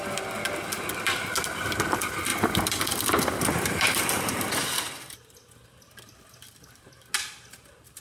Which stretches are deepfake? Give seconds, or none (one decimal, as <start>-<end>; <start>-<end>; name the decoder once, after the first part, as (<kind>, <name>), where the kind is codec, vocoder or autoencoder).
2.3-7.1 (vocoder, BigVGAN v2)